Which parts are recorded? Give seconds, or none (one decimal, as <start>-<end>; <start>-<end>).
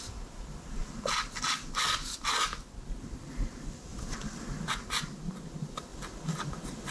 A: 0.0-6.9